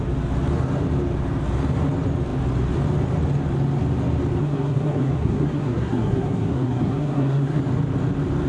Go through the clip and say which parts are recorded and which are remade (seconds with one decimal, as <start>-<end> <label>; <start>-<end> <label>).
0.0-4.4 recorded; 4.4-7.6 remade; 7.6-8.5 recorded